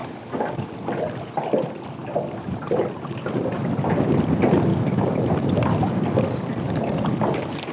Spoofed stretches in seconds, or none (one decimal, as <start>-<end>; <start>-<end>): 0.0-0.7; 4.7-5.2